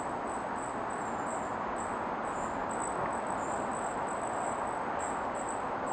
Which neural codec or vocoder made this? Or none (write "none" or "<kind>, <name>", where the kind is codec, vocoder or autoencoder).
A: none